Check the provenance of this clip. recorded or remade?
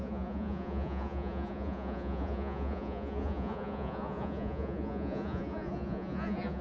remade